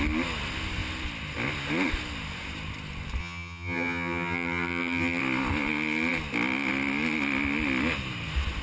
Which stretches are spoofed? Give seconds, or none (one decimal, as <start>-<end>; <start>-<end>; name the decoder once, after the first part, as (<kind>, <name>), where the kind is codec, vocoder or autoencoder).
3.2-5.2 (vocoder, HiFi-GAN)